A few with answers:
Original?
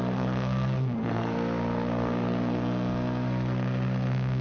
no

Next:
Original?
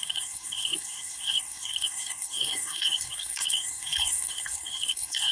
no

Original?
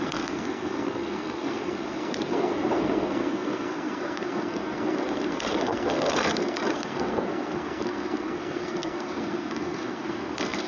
no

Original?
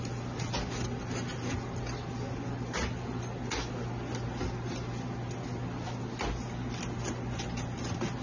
yes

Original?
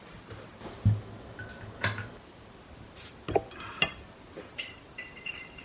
yes